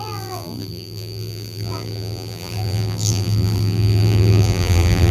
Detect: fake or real fake